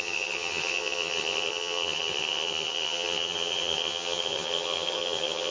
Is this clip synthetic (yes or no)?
yes